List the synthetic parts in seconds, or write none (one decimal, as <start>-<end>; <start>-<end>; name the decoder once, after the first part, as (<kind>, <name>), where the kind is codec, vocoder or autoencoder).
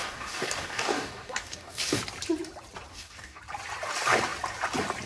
0.0-2.0 (codec, DAC); 2.9-3.4